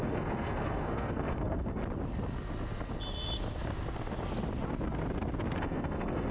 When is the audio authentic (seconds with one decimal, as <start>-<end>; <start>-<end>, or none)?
1.8-5.6